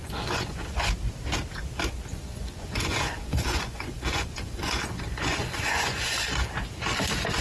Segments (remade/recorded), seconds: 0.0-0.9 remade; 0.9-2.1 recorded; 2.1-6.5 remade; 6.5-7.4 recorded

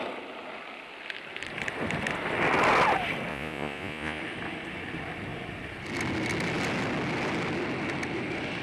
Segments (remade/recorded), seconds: 0.0-3.3 recorded; 3.3-4.2 remade; 4.2-8.6 recorded

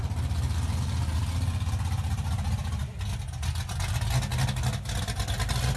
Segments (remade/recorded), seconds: 0.0-5.8 recorded

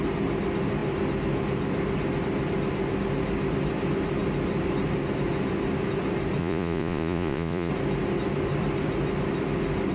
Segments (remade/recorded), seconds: 0.0-6.4 recorded; 6.4-7.7 remade; 7.7-9.9 recorded

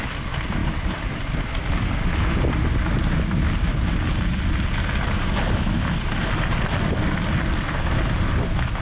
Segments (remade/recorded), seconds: 0.0-8.8 recorded

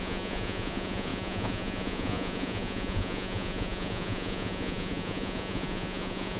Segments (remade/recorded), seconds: 0.0-6.4 remade